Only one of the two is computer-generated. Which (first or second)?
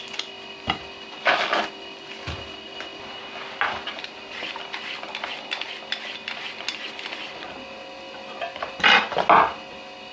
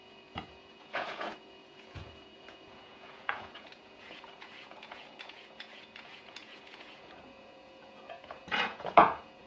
second